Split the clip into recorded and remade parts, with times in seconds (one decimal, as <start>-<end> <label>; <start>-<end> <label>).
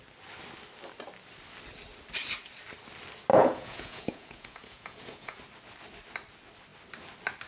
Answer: 0.0-3.3 recorded; 3.3-5.4 remade; 5.4-7.5 recorded